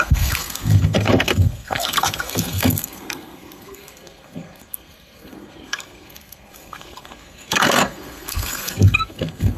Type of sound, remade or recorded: remade